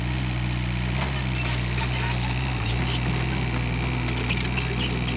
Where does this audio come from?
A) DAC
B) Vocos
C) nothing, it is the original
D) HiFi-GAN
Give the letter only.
C